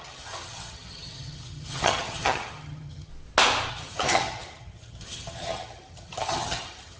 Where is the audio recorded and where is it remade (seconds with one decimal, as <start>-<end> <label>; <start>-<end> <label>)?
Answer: 0.0-3.1 remade; 3.1-3.7 recorded; 3.7-7.0 remade